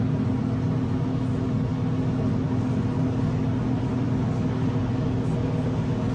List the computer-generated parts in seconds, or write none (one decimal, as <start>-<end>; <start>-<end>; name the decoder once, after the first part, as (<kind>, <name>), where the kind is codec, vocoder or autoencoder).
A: none